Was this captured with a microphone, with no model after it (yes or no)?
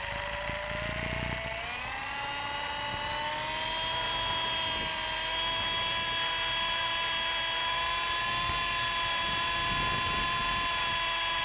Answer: yes